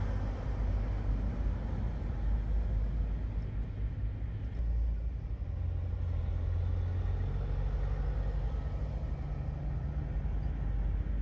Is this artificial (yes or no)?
no